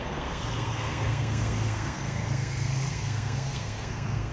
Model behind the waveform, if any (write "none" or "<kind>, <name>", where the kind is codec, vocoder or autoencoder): codec, SNAC